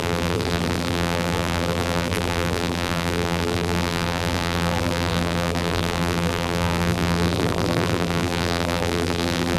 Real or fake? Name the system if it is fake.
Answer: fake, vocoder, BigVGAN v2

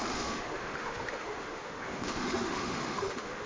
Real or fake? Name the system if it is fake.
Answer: fake, autoencoder, DAC-VAE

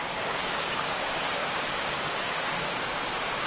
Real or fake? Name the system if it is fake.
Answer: fake, codec, DAC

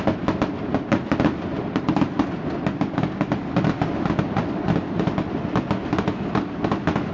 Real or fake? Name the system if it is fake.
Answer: real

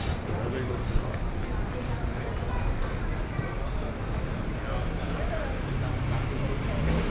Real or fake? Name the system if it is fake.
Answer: real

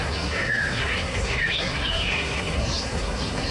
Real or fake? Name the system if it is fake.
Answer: fake, codec, SNAC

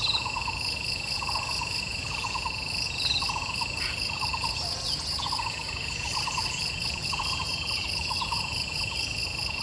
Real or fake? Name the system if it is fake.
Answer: fake, vocoder, Vocos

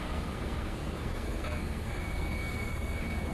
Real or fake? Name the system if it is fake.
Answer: fake, codec, SNAC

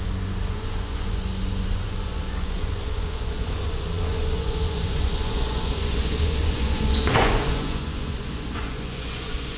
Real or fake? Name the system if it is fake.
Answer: fake, vocoder, Vocos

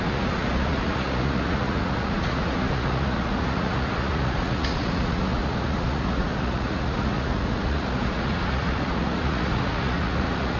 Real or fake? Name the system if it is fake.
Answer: fake, vocoder, Vocos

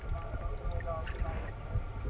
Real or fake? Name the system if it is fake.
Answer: real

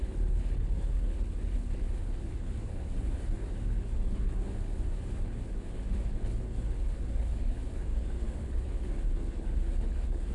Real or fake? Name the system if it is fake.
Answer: fake, codec, HILCodec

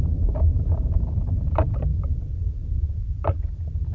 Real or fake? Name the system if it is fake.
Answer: fake, vocoder, BigVGAN v2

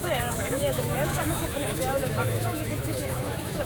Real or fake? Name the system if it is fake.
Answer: fake, autoencoder, DAC-VAE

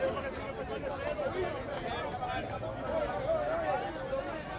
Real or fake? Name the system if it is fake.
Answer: real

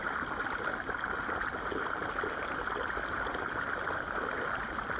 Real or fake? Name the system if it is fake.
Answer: real